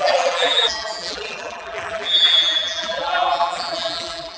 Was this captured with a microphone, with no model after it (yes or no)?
no